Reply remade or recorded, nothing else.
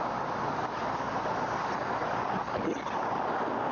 recorded